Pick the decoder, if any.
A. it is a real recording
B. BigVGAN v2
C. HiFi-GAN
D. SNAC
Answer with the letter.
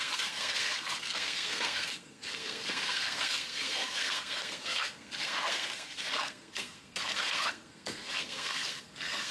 D